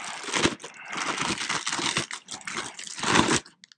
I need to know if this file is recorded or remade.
recorded